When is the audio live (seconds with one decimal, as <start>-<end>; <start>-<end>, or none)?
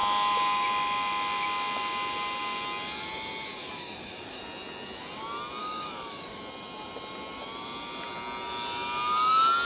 0.0-3.6; 4.4-5.6; 6.4-9.6